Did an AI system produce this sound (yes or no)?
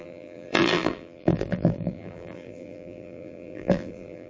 yes